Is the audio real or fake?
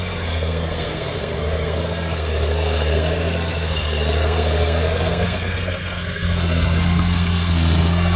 fake